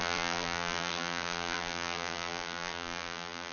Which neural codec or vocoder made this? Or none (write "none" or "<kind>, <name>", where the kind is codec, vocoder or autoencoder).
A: vocoder, BigVGAN v2